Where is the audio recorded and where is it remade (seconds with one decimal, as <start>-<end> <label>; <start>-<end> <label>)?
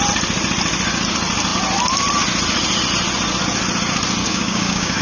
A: 0.0-4.2 recorded; 4.2-5.0 remade